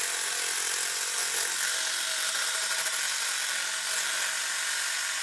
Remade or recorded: recorded